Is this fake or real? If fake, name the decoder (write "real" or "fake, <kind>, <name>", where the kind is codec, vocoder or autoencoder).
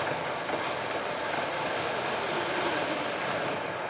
fake, vocoder, BigVGAN v2